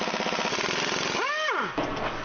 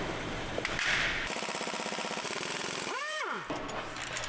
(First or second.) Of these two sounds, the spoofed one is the second